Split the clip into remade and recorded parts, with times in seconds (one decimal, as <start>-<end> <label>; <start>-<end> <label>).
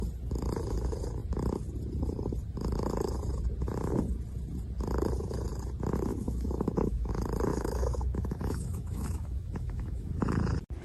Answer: 0.0-6.1 recorded; 6.1-7.1 remade; 7.1-7.5 recorded; 7.5-10.2 remade; 10.2-10.8 recorded